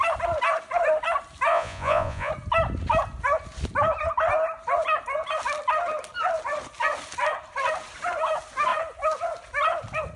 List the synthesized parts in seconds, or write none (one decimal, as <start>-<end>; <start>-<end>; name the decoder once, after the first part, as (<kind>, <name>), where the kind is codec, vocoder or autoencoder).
1.5-2.3 (vocoder, Vocos)